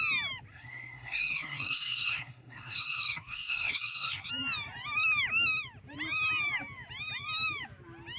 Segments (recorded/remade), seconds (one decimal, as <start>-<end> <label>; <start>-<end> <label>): 0.0-0.5 recorded; 0.5-4.3 remade; 4.3-8.2 recorded